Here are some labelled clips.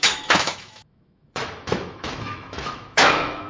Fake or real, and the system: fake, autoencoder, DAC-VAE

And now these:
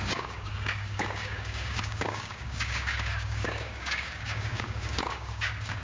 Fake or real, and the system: fake, codec, DAC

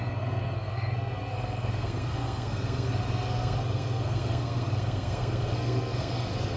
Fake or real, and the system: fake, codec, SNAC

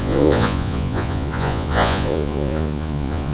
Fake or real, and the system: fake, vocoder, Vocos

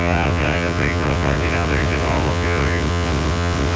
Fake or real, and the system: fake, vocoder, WaveNeXt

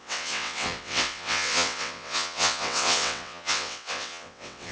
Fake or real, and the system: fake, vocoder, WaveNeXt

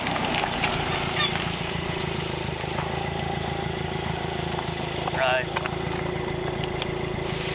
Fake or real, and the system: real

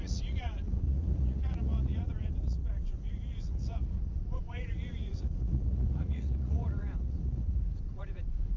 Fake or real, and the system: fake, vocoder, Vocos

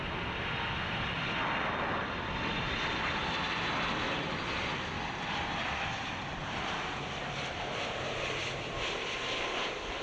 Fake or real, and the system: real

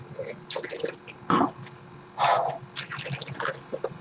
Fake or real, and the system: real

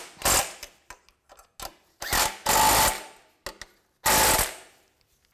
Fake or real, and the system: real